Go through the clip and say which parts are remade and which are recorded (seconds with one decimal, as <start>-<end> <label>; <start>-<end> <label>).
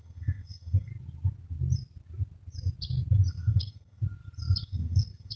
0.0-0.9 remade; 0.9-3.3 recorded; 3.3-4.0 remade; 4.0-4.6 recorded; 4.6-5.4 remade